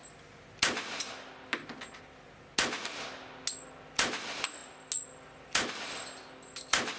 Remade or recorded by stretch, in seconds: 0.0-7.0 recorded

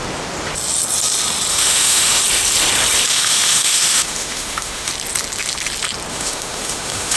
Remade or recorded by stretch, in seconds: 0.0-1.5 recorded; 1.5-2.2 remade; 2.2-3.1 recorded; 3.1-4.9 remade; 4.9-6.1 recorded; 6.1-7.2 remade

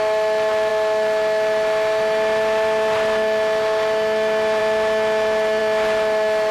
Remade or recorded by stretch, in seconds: 0.0-6.5 recorded

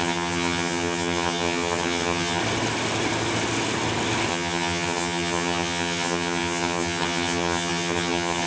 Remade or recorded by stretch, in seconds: 0.0-2.4 remade; 2.4-4.3 recorded; 4.3-8.5 remade